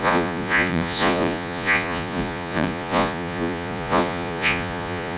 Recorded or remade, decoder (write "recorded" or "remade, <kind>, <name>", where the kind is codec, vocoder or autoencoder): remade, vocoder, Vocos